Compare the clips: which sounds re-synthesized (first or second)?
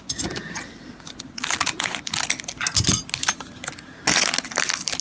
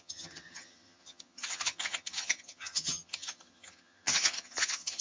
second